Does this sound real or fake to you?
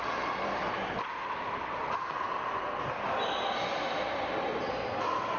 real